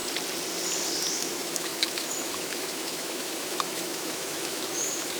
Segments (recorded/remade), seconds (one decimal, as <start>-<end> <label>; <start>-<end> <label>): 0.0-1.1 recorded; 1.1-5.2 remade